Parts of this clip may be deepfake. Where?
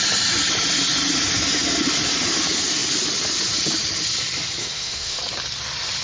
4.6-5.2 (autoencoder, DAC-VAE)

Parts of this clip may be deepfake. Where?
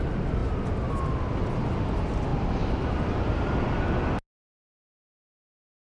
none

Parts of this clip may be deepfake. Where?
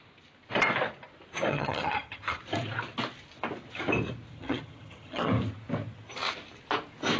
1.5-2.4 (vocoder, HiFi-GAN); 4.3-5.3